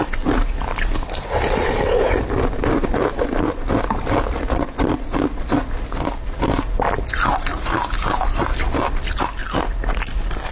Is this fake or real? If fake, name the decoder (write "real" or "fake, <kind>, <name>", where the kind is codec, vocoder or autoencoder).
real